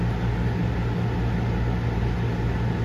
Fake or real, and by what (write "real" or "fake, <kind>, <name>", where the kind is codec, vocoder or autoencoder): real